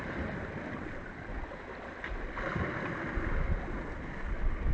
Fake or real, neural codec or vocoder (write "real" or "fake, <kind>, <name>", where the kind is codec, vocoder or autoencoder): real